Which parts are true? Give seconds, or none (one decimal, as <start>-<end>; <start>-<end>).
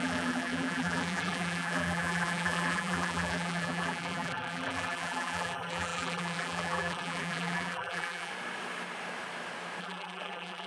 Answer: 8.3-9.8